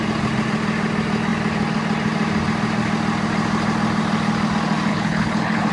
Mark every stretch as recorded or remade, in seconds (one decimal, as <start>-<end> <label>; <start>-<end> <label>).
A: 0.0-4.9 recorded; 4.9-5.7 remade